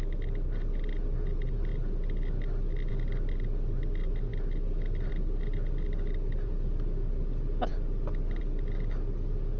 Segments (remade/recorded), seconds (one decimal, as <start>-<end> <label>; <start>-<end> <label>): 0.0-9.6 recorded